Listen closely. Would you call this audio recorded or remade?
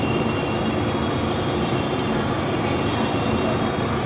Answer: recorded